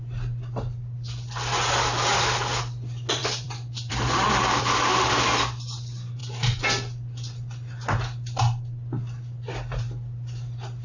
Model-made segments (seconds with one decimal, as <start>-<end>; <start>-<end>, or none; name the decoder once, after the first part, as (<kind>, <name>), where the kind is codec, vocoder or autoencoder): 3.2-5.1 (vocoder, BigVGAN v2)